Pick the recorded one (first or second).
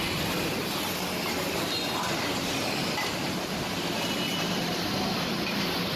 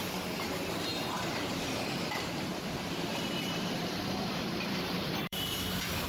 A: first